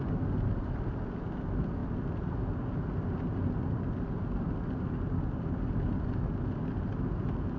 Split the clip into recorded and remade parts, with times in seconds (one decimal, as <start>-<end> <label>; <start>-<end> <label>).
0.0-7.6 recorded